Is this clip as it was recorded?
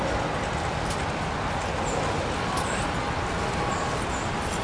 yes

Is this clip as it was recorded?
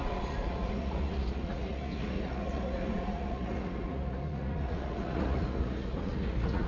no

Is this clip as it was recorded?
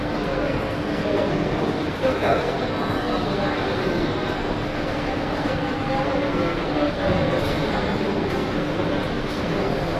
no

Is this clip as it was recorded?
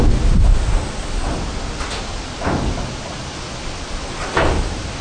yes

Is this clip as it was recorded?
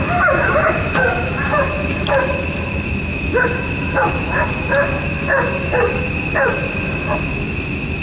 no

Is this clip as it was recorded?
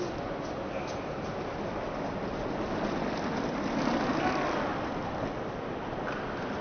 yes